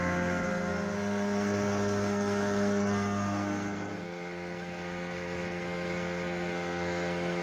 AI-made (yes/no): yes